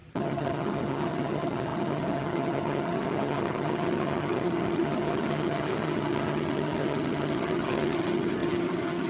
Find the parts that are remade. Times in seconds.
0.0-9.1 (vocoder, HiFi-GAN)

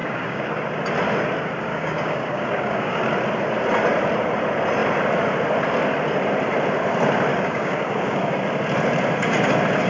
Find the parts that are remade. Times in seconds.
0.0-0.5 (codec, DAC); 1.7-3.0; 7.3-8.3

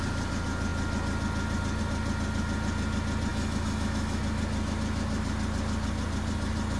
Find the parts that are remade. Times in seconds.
3.3-4.2 (autoencoder, DAC-VAE)

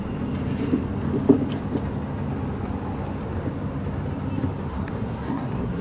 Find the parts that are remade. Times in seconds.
4.7-5.8 (codec, SNAC)

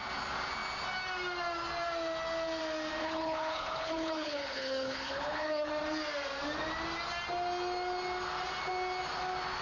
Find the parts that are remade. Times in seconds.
3.0-5.7 (codec, HILCodec)